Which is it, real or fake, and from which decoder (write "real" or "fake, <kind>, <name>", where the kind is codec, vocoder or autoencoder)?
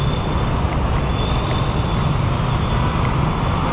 real